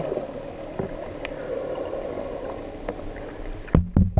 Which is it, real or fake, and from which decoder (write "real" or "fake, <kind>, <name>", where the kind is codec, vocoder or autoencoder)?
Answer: real